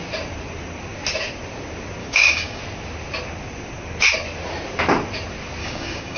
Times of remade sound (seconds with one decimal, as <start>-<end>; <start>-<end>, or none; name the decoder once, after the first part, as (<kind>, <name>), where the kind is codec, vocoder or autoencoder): 2.0-2.6 (codec, DAC); 5.6-6.2